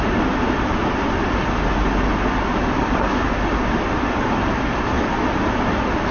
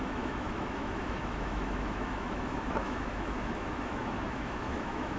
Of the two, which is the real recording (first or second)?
first